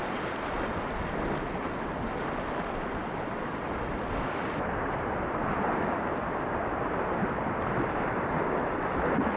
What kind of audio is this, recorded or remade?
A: recorded